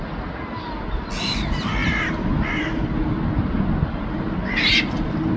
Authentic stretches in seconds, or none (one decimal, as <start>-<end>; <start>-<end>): 0.0-5.4